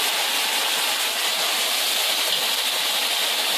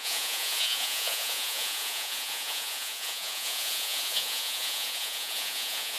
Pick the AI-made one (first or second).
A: second